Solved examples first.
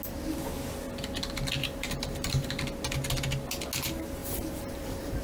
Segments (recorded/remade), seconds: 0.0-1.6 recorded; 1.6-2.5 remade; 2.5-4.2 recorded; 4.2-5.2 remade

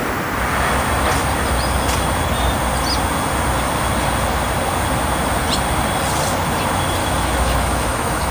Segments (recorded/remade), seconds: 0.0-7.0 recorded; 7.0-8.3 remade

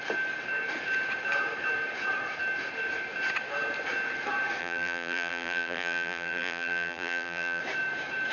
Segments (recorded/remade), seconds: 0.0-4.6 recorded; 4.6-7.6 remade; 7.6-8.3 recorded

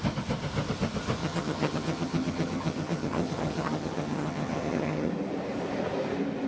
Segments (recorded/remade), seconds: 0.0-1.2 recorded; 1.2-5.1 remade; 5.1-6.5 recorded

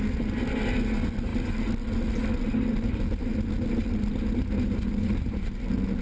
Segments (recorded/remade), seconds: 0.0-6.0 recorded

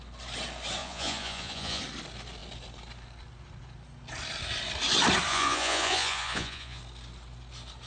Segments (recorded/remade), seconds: 0.0-0.8 recorded; 0.8-1.8 remade; 1.8-5.3 recorded; 5.3-6.8 remade; 6.8-7.9 recorded